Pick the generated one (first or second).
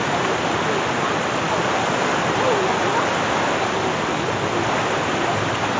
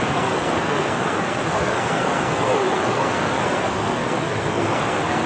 second